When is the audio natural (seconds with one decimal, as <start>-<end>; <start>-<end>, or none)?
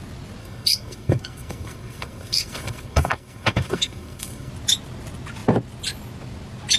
0.0-0.4; 4.5-6.8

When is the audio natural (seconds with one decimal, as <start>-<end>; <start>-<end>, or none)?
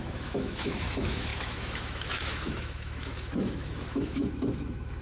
none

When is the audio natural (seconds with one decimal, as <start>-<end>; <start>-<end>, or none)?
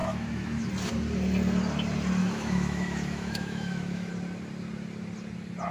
0.7-2.2; 4.1-5.7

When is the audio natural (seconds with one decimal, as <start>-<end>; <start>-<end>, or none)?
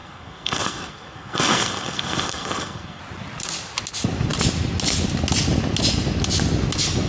3.0-7.1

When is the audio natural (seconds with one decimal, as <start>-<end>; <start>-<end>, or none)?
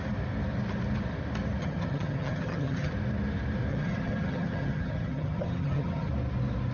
0.0-1.6; 2.9-3.7; 6.1-6.7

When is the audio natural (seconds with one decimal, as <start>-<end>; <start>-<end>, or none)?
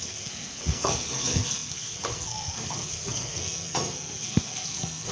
none